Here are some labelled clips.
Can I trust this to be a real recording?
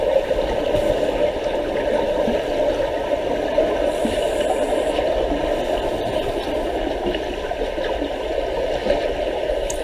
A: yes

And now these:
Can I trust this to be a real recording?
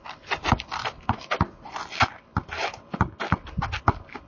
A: yes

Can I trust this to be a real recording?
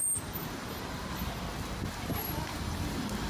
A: yes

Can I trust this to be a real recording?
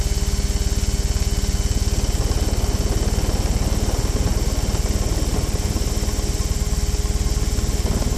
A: yes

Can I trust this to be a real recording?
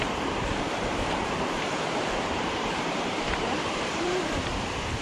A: no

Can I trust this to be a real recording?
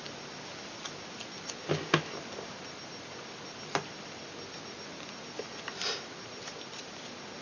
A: yes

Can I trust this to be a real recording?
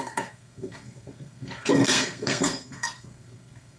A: no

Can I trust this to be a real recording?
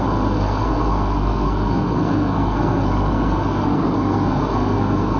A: no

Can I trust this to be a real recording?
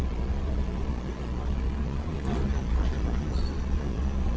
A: no